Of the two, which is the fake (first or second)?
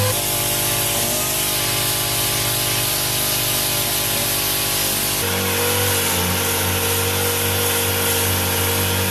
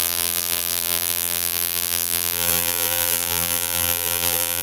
second